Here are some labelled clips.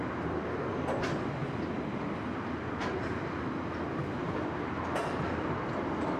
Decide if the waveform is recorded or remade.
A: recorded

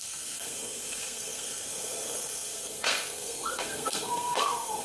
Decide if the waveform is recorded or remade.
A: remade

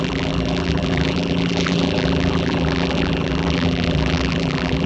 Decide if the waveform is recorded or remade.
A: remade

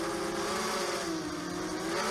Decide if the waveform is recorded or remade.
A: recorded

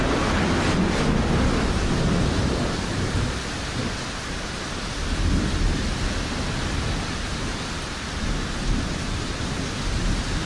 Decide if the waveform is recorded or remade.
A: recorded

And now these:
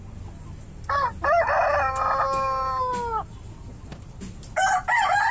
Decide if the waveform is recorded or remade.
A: recorded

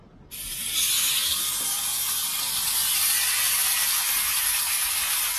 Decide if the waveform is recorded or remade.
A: recorded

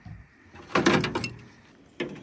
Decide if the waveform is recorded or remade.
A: recorded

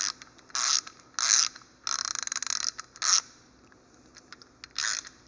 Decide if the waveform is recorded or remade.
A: recorded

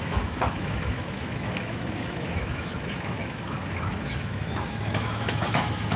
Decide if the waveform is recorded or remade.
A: remade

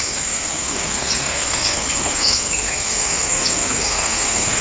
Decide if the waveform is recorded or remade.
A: remade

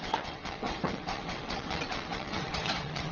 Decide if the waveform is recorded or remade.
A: remade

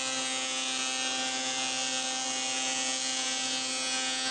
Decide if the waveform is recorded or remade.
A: recorded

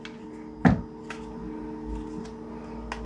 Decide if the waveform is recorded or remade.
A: recorded